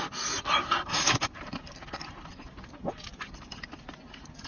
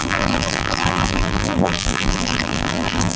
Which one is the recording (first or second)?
first